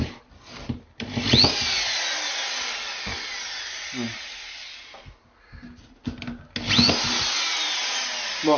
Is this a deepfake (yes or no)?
no